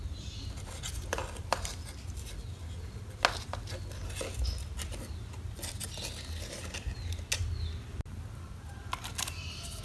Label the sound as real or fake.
real